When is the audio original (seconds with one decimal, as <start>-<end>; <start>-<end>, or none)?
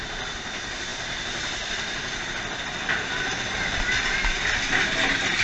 0.0-5.4